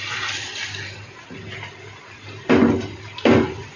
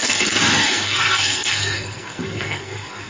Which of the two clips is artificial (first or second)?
second